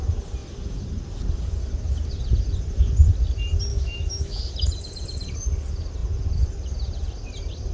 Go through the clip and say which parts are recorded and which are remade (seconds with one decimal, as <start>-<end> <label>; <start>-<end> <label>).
0.0-3.7 recorded; 3.7-4.4 remade; 4.4-7.7 recorded